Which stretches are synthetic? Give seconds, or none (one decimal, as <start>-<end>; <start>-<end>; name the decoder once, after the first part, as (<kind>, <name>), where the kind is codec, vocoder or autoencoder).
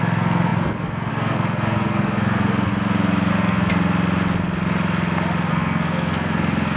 0.0-2.7 (codec, SNAC); 3.3-3.7; 5.5-6.8